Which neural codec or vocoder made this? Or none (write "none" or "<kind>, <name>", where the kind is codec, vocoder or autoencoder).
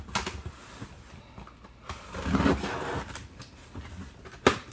none